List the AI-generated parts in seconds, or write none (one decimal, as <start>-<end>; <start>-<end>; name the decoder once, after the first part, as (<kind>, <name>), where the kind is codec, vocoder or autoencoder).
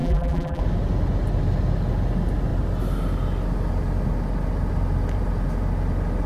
0.0-0.6 (vocoder, BigVGAN v2)